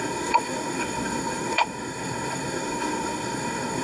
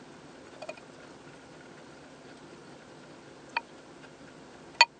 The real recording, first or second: second